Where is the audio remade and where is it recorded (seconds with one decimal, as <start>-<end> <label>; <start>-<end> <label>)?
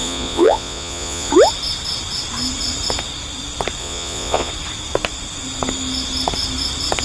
0.0-1.3 remade; 1.3-3.8 recorded; 3.8-4.5 remade; 4.5-7.0 recorded